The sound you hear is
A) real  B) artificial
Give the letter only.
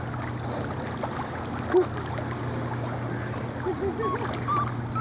A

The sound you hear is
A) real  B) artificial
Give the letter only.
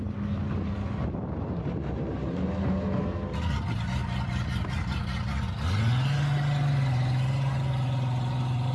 A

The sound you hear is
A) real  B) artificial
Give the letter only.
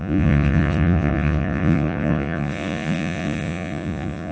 B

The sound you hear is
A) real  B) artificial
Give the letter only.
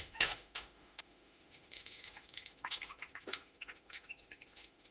B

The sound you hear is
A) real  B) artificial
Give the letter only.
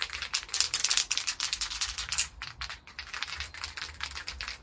B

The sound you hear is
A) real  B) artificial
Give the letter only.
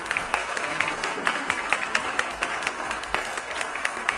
B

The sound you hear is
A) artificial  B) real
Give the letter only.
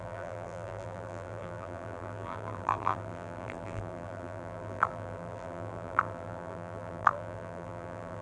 A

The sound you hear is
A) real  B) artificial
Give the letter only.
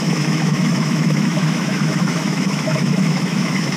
B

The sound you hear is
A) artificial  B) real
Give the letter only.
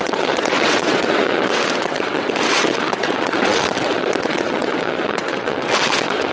A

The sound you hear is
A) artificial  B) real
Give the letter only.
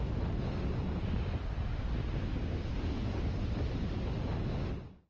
B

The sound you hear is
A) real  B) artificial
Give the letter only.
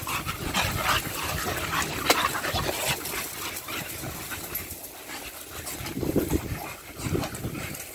A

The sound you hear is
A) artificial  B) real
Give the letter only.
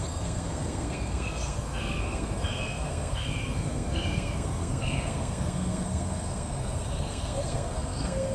A